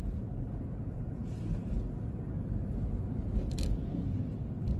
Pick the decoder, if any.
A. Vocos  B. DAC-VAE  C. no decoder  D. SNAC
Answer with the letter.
C